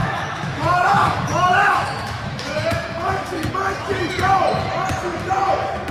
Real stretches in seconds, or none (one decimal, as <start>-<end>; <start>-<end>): 3.5-5.9